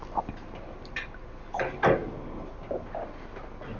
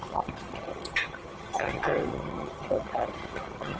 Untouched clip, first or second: first